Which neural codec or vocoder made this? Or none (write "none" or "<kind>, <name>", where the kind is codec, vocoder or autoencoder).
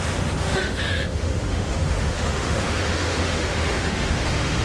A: autoencoder, DAC-VAE